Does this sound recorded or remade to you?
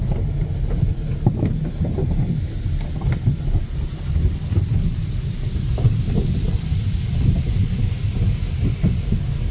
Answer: recorded